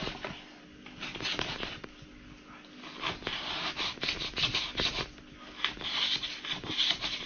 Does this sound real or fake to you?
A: real